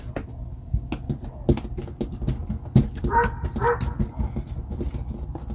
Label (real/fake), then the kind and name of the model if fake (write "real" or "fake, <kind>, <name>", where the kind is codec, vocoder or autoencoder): real